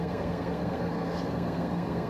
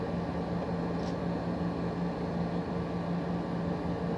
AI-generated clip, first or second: first